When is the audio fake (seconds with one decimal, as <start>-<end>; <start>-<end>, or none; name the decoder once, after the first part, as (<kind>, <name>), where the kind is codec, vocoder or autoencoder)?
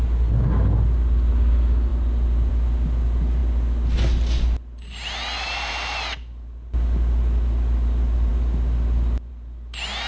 none